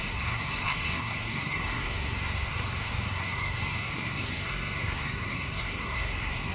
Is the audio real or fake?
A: fake